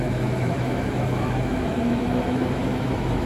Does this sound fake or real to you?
fake